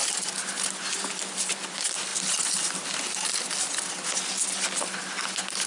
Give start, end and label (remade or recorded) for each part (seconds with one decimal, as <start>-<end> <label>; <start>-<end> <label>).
0.0-5.7 recorded